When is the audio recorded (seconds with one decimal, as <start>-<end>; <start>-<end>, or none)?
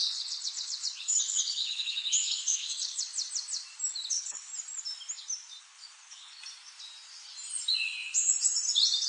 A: 3.1-4.1; 4.5-5.6; 6.4-9.1